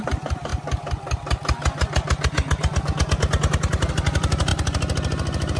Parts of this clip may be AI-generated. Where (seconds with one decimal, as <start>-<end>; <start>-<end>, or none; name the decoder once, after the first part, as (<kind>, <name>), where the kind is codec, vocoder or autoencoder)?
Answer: 0.0-0.5 (vocoder, BigVGAN v2); 3.9-4.5